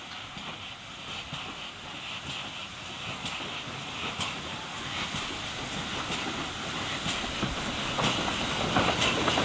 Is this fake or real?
real